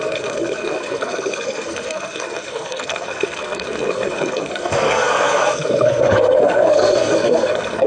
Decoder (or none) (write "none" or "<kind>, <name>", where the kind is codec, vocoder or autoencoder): codec, SNAC